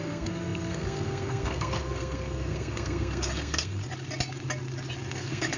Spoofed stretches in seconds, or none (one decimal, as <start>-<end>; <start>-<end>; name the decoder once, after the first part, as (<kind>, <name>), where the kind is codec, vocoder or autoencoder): 0.0-3.8 (codec, SNAC); 5.1-5.6